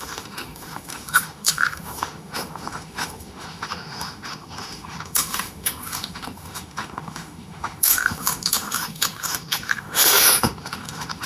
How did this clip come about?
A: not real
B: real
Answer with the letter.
A